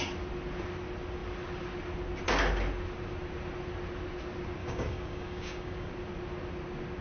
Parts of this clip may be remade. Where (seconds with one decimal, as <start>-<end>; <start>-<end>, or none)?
4.6-5.9